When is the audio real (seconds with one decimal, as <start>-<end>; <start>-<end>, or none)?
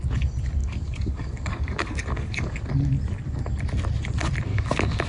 0.0-0.6; 2.6-4.5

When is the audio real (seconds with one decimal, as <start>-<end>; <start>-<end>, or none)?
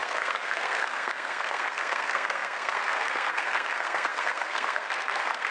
none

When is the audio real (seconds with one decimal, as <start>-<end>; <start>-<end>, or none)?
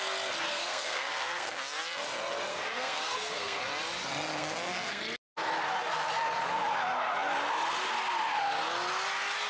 0.0-0.5; 1.6-2.5; 3.6-4.4; 5.0-9.5